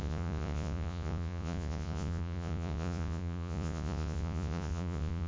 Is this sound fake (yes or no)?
yes